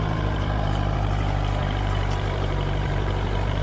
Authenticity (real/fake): fake